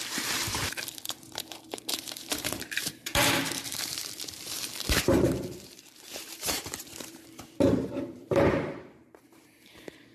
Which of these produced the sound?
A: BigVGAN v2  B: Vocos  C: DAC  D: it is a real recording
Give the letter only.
A